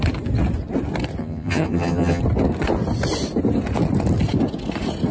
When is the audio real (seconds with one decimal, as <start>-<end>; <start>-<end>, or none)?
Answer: 0.0-1.2; 2.2-5.1

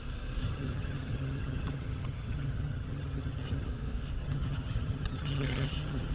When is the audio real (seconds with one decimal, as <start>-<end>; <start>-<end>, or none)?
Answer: 0.0-0.4; 3.7-4.2

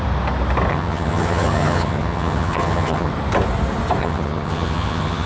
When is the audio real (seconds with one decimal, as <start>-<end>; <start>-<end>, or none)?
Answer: 0.0-0.7; 3.1-4.0

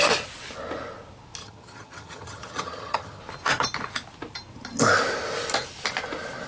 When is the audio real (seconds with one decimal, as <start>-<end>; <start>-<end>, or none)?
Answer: 0.0-1.4; 3.2-6.5

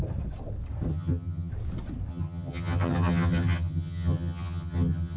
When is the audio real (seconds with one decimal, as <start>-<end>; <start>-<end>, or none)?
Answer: 0.0-0.9; 1.5-2.1

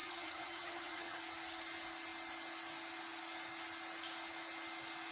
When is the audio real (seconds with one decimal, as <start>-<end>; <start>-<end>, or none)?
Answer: 1.2-5.1

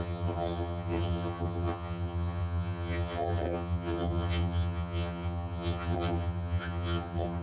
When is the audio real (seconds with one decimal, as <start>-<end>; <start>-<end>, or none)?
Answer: none